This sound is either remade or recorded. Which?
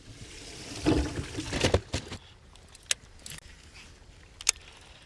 recorded